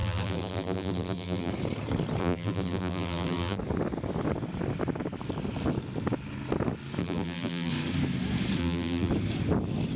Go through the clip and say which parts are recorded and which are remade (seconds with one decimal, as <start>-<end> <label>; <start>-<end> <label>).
0.0-1.5 remade; 1.5-2.2 recorded; 2.2-3.6 remade; 3.6-7.0 recorded; 7.0-7.7 remade; 7.7-8.6 recorded; 8.6-9.1 remade; 9.1-10.0 recorded